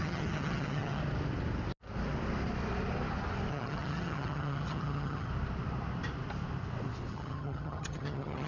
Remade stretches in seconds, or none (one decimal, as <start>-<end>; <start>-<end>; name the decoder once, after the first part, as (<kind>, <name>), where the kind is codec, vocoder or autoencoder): 0.0-1.0 (vocoder, HiFi-GAN); 3.5-5.3; 7.1-8.5

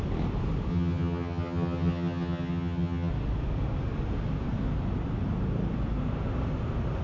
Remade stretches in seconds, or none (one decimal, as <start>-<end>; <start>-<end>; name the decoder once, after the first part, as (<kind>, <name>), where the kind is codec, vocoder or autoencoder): 0.7-3.1 (vocoder, HiFi-GAN)

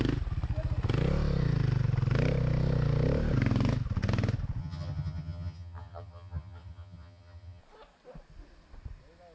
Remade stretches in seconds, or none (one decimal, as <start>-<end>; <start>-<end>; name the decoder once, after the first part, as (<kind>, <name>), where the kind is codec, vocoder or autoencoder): 4.6-7.6 (vocoder, HiFi-GAN)

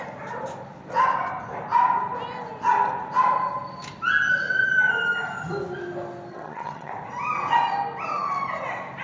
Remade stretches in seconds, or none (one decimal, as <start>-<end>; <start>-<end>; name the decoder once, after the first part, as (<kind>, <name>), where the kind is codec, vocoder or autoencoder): 6.3-6.9 (vocoder, HiFi-GAN)

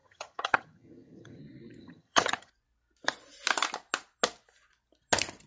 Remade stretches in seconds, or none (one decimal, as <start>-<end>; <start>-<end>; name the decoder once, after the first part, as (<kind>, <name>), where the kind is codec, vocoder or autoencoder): 0.0-1.4 (vocoder, HiFi-GAN); 1.8-2.5